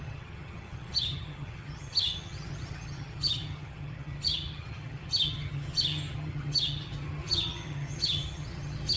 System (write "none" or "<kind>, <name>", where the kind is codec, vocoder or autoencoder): vocoder, HiFi-GAN